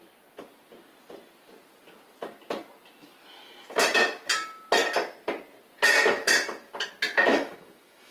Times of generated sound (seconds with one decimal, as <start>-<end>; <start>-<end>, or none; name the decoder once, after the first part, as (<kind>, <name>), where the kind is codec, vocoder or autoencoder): 7.3-8.1 (autoencoder, DAC-VAE)